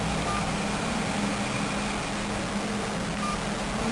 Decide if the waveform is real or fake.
real